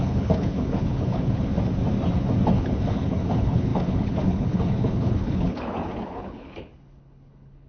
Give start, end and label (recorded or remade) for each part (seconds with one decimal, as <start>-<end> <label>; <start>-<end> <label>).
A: 0.0-1.5 remade; 1.5-2.5 recorded; 2.5-7.7 remade